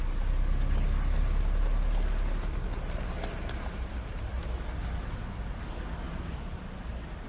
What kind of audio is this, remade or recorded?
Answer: recorded